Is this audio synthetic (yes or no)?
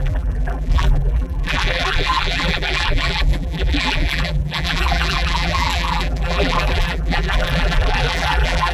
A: yes